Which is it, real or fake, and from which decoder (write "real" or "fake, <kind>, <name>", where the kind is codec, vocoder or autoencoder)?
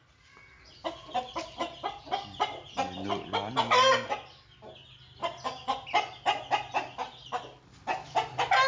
real